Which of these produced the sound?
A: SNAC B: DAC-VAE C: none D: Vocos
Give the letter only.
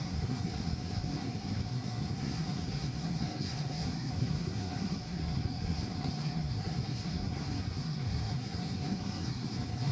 A